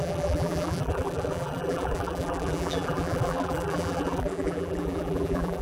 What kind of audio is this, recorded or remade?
remade